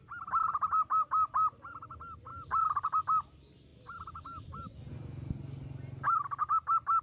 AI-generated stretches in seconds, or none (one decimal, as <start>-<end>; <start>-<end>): 2.3-3.0